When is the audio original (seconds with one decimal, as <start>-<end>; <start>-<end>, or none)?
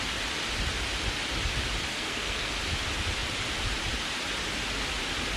0.0-1.9; 2.5-5.4